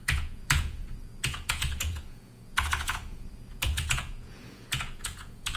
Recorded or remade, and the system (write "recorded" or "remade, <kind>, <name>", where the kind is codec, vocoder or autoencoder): remade, vocoder, Vocos